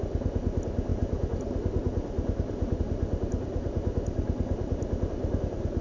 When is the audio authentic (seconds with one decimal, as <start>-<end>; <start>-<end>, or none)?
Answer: 0.0-5.8